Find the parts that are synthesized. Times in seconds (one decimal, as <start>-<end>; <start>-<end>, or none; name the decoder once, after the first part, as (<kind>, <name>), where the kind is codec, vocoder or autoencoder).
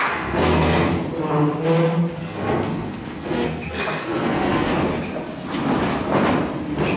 0.0-0.9 (codec, SNAC); 2.2-4.7